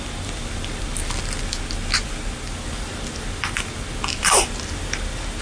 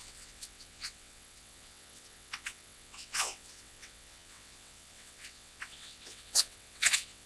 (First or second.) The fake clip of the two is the second